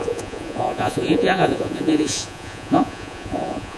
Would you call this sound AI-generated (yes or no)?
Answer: yes